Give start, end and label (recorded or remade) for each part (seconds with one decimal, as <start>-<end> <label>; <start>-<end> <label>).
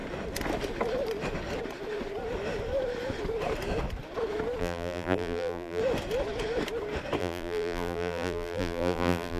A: 0.0-4.6 recorded; 4.6-5.8 remade; 5.8-7.2 recorded; 7.2-9.4 remade